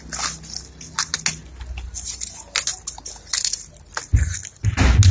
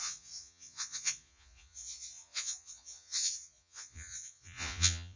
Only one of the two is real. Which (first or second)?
first